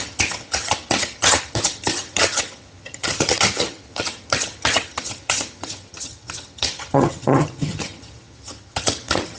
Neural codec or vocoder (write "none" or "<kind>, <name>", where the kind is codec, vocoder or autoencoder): vocoder, HiFi-GAN